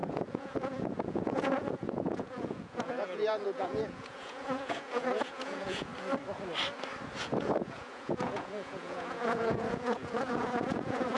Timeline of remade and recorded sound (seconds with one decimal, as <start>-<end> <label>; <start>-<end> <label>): 0.0-5.9 remade; 5.9-7.2 recorded; 7.2-11.2 remade